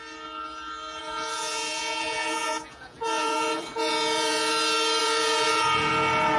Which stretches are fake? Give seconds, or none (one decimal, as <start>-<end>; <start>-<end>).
1.0-4.5; 5.0-5.9